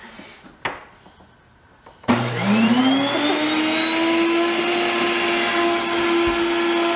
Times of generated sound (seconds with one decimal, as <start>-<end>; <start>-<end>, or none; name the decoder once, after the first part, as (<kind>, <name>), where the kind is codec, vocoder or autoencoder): 1.5-2.8 (vocoder, BigVGAN v2)